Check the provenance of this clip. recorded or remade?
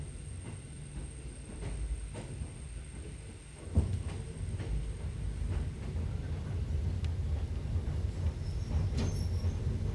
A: recorded